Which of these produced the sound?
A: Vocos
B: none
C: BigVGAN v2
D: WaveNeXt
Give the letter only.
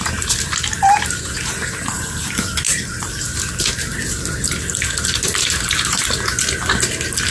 B